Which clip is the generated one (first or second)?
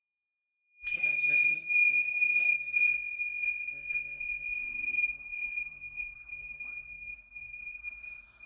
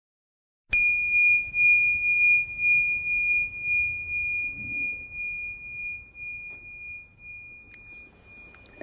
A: first